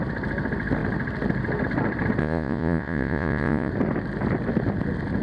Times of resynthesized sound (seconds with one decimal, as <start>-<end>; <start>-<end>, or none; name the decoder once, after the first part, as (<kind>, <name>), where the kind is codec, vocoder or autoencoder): 2.2-3.7 (vocoder, Vocos)